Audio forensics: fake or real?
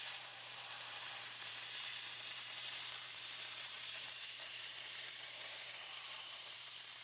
fake